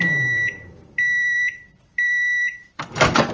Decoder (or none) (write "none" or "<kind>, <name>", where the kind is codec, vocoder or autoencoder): vocoder, BigVGAN v2